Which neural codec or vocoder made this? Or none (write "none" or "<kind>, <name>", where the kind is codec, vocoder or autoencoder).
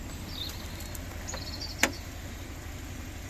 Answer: none